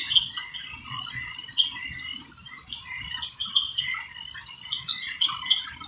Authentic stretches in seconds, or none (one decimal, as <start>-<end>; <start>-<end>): 0.0-1.1